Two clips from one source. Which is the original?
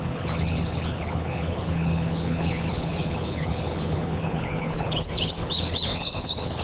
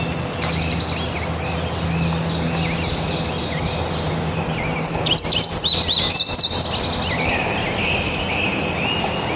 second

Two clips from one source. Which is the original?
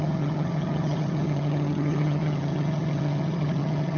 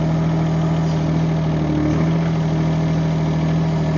second